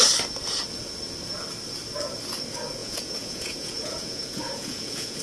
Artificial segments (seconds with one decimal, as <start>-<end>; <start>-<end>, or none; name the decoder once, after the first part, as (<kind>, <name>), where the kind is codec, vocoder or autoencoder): 2.8-5.2 (vocoder, Vocos)